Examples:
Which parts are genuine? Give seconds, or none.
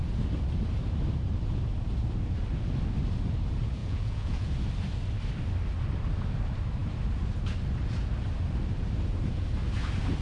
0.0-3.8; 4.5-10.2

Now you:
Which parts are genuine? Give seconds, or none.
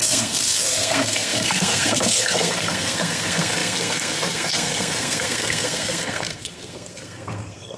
none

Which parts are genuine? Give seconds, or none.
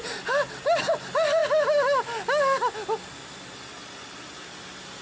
0.0-5.0